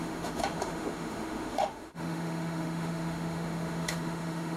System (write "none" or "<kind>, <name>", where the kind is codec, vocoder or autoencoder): autoencoder, DAC-VAE